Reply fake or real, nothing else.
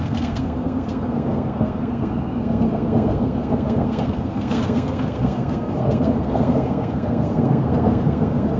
fake